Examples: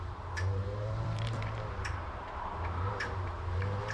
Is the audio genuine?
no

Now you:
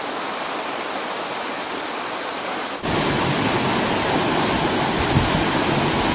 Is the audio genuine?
yes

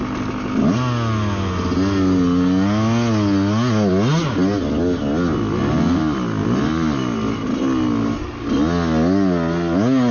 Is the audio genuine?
yes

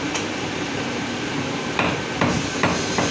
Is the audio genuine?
yes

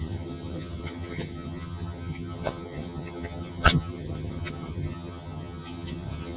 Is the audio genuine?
no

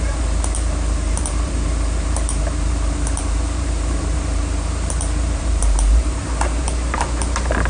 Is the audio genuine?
no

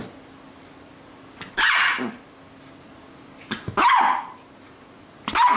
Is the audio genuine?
yes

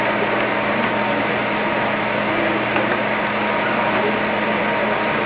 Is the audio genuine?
yes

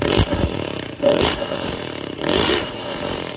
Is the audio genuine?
no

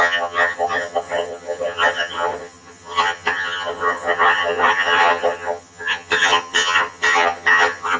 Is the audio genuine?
no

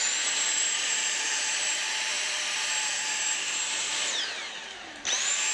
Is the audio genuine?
no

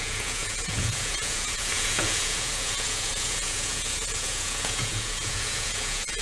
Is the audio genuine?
no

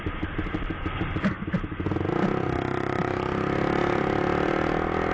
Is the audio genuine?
yes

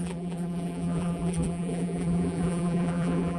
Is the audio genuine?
no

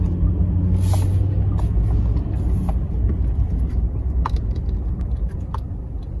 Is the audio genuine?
yes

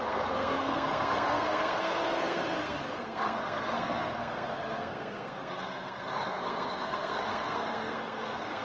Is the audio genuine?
no